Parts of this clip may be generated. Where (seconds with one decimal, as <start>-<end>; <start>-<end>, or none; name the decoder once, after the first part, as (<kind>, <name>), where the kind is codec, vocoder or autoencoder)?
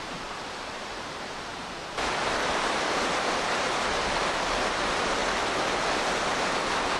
0.0-1.5 (vocoder, BigVGAN v2); 2.3-5.2; 6.0-7.0